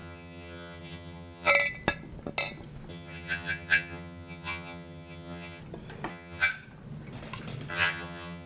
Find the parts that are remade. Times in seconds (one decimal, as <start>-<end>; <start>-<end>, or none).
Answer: 0.0-1.5; 2.9-5.6; 6.1-6.5; 7.7-8.5